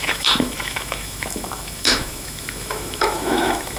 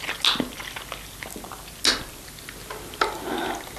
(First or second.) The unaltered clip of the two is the second